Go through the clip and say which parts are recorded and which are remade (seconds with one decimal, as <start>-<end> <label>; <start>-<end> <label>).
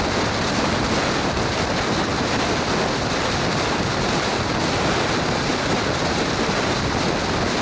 0.0-7.6 recorded